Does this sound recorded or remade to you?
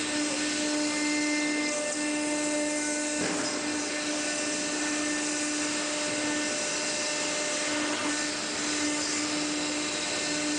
recorded